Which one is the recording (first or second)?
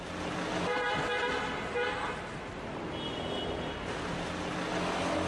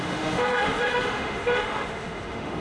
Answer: first